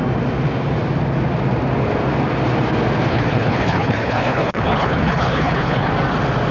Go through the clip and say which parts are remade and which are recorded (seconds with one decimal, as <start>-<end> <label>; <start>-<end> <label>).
0.0-3.1 recorded; 3.1-5.9 remade; 5.9-6.5 recorded